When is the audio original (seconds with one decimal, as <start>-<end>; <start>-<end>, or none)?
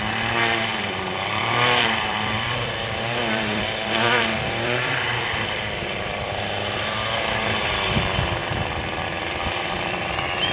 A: 0.0-0.7; 5.8-8.4; 9.9-10.5